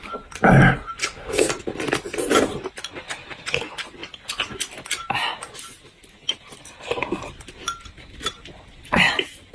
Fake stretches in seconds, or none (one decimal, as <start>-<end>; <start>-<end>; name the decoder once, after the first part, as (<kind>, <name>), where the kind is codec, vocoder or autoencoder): 1.0-1.5 (codec, SNAC)